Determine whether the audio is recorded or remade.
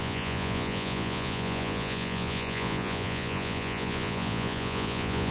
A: remade